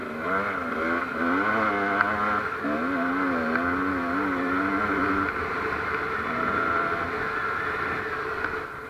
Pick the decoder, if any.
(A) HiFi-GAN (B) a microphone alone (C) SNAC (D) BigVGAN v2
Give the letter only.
B